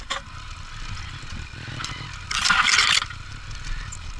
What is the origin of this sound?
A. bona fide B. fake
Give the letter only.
A